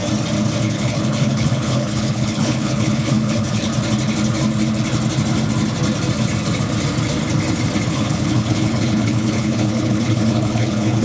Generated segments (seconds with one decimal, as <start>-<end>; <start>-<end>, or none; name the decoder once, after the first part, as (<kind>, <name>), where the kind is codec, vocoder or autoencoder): 0.6-3.7 (codec, HILCodec); 7.9-11.0